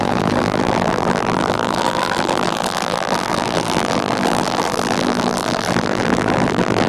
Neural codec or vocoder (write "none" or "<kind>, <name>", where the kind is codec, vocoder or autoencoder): vocoder, BigVGAN v2